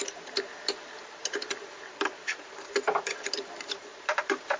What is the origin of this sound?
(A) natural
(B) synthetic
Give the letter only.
B